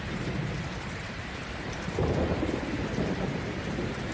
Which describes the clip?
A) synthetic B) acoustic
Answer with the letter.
A